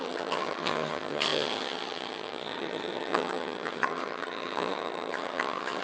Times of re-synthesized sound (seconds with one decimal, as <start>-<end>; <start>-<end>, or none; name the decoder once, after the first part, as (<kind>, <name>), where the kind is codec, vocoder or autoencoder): 0.0-5.8 (vocoder, HiFi-GAN)